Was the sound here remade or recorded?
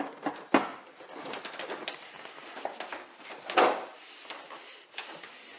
recorded